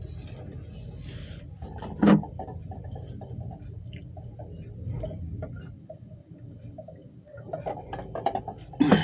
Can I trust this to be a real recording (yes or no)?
yes